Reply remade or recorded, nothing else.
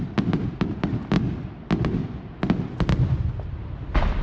recorded